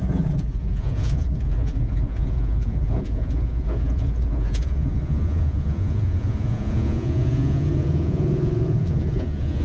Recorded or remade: remade